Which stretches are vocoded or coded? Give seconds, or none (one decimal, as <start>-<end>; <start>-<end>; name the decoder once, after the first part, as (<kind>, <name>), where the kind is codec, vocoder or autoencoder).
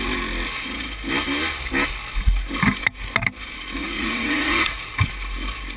3.8-5.1 (vocoder, Vocos)